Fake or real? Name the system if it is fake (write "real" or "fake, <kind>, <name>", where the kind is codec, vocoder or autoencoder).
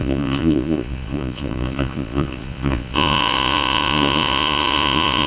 fake, vocoder, Vocos